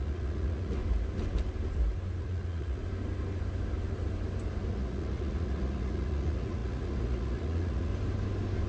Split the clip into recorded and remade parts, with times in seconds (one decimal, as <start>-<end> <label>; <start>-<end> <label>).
0.0-0.8 remade; 0.8-2.2 recorded; 2.2-2.8 remade; 2.8-4.7 recorded; 4.7-7.9 remade; 7.9-8.7 recorded